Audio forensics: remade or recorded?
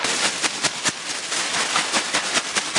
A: remade